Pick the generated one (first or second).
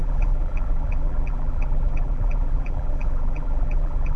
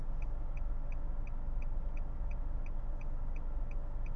first